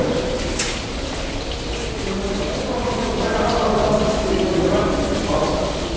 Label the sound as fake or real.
real